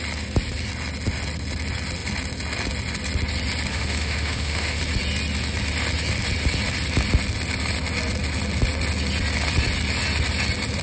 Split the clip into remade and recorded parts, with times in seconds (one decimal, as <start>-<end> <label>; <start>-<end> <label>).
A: 0.0-3.7 recorded; 3.7-4.8 remade; 4.8-10.8 recorded